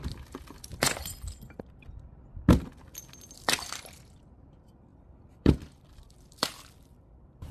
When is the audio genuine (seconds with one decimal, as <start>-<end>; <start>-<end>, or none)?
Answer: 0.0-0.7; 1.4-4.9